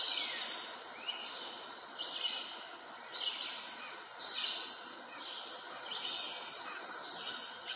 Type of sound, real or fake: real